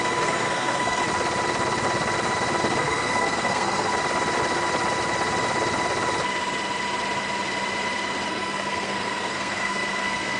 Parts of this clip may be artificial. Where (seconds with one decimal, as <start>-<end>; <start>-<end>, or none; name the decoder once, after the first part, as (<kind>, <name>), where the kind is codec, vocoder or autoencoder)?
0.0-1.0 (codec, SNAC); 2.8-3.9; 8.3-10.4